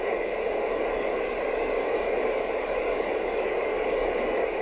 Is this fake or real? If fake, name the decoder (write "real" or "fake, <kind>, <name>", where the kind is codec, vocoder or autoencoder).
fake, codec, DAC